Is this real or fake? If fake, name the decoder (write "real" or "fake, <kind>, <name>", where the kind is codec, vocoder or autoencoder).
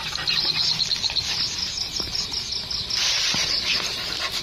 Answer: real